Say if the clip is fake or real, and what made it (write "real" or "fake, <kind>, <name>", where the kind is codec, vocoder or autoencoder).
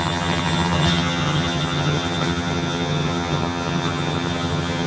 fake, vocoder, HiFi-GAN